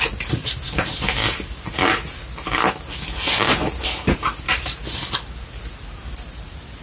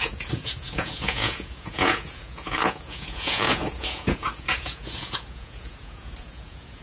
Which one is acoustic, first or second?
first